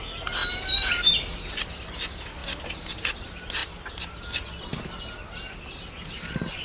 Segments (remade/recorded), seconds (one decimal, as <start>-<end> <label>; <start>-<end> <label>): 0.0-6.6 recorded